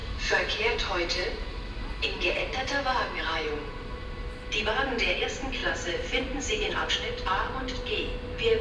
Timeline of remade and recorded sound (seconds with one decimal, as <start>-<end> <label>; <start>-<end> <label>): 0.0-4.6 remade; 4.6-5.6 recorded; 5.6-6.9 remade; 6.9-8.6 recorded